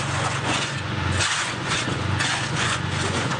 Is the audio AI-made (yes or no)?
yes